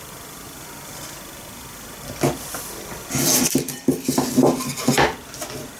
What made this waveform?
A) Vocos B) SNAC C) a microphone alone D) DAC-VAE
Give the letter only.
C